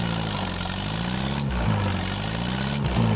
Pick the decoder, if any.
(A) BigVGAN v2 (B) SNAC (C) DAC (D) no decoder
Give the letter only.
D